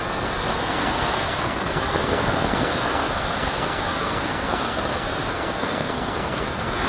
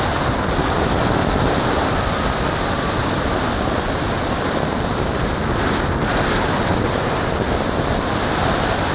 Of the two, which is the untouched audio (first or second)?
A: second